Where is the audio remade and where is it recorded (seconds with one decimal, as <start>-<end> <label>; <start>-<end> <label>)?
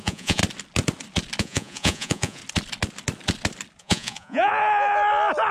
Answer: 0.0-0.4 remade; 0.4-1.4 recorded; 1.4-2.4 remade; 2.4-3.8 recorded; 3.8-4.5 remade; 4.5-5.5 recorded